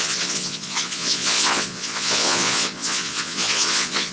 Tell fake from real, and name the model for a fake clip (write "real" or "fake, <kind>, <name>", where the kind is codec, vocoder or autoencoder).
fake, vocoder, Vocos